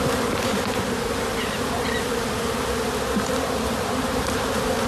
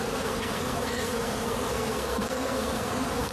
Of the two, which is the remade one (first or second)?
second